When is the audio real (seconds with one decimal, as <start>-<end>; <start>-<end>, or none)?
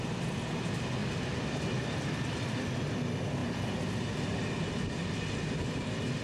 0.0-6.2